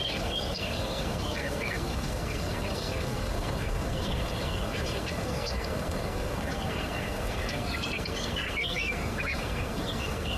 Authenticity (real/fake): fake